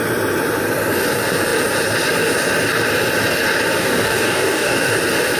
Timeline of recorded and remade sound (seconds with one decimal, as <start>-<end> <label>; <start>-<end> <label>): 0.0-3.8 recorded; 3.8-4.9 remade; 4.9-5.4 recorded